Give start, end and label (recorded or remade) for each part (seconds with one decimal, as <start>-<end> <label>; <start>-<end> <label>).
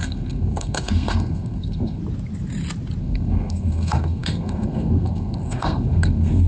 0.0-2.0 remade; 2.0-3.0 recorded; 3.0-6.5 remade